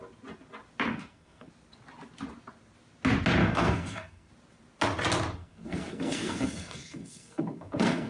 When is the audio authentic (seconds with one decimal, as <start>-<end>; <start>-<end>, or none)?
0.0-0.9; 1.5-3.4; 4.3-5.4